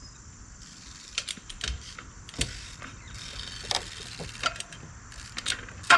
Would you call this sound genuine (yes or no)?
no